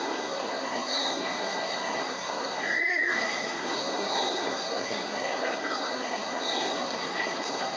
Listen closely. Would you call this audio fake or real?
fake